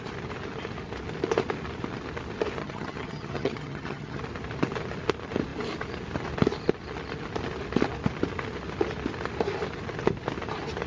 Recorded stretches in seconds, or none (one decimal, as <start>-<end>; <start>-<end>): 0.0-2.6; 4.2-10.9